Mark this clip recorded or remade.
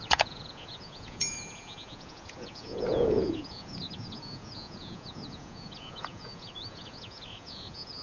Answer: remade